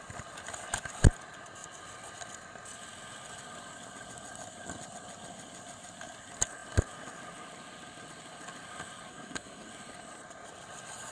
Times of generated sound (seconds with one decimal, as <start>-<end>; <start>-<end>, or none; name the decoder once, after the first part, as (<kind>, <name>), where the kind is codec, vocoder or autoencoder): 9.1-9.7 (codec, SNAC)